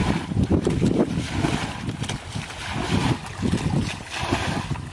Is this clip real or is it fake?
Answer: real